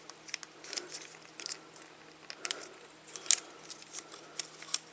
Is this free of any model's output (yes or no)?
yes